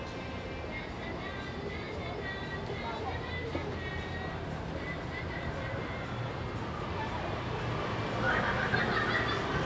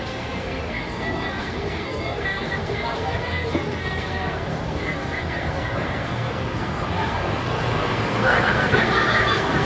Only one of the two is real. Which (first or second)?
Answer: first